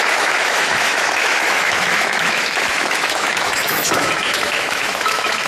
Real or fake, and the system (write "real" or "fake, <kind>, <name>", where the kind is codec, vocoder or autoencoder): fake, autoencoder, DAC-VAE